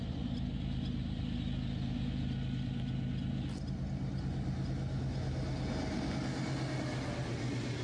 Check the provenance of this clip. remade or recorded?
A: recorded